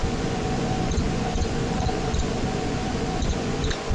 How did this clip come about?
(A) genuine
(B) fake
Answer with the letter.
B